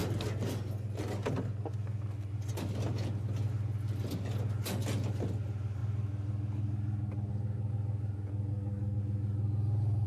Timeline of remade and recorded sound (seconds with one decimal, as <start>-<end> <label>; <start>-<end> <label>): 0.0-8.5 recorded; 8.5-9.0 remade; 9.0-10.1 recorded